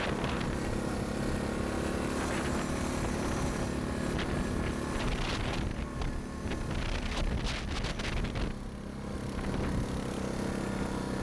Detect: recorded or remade recorded